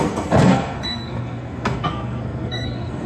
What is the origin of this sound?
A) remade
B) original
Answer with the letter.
A